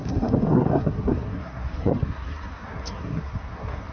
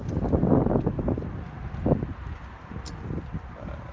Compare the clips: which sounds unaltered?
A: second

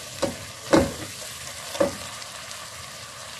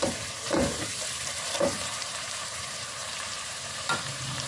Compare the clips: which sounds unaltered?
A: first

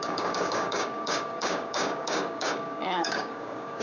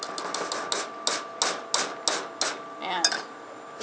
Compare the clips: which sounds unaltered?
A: second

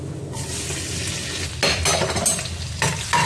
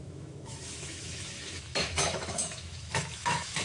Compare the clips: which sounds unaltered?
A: first